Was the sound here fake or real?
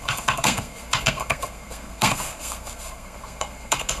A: fake